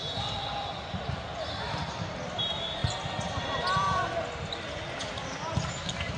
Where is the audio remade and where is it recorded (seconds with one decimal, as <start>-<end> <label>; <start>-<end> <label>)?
0.0-6.2 recorded

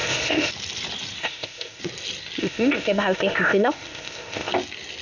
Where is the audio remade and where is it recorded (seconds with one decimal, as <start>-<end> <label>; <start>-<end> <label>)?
0.0-0.5 remade; 0.5-1.2 recorded; 1.2-1.8 remade; 1.8-2.4 recorded; 2.4-4.5 remade; 4.5-5.0 recorded

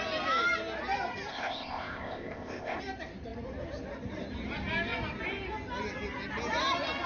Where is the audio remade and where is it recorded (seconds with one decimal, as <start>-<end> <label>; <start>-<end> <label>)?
0.0-1.3 recorded; 1.3-2.8 remade; 2.8-7.1 recorded

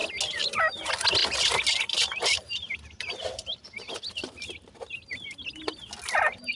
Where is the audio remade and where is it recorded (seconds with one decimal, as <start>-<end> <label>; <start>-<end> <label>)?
0.0-6.5 recorded